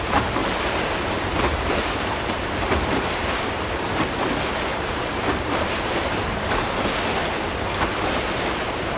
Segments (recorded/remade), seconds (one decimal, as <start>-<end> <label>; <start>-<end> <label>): 0.0-0.4 recorded; 0.4-1.7 remade; 1.7-4.7 recorded; 4.7-6.8 remade; 6.8-9.0 recorded